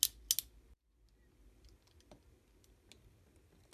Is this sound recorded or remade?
recorded